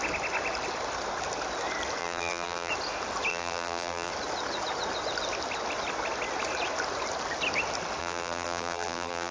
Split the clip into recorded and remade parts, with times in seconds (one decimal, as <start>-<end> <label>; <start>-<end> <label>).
0.0-2.0 recorded; 2.0-2.7 remade; 2.7-3.3 recorded; 3.3-4.1 remade; 4.1-8.0 recorded; 8.0-9.3 remade